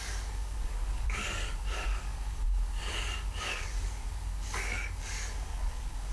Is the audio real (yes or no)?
no